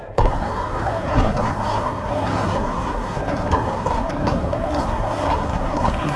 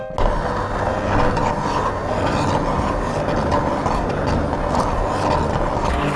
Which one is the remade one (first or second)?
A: first